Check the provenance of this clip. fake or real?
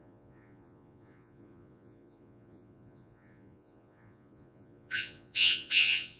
fake